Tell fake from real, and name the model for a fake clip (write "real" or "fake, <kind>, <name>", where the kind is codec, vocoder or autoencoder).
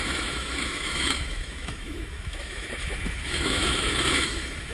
fake, autoencoder, DAC-VAE